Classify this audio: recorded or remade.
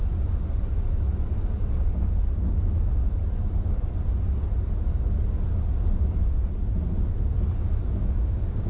recorded